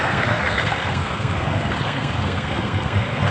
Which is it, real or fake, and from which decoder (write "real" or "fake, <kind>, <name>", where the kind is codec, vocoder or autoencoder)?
fake, codec, SNAC